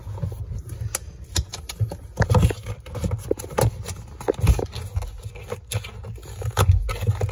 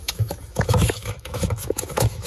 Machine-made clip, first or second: second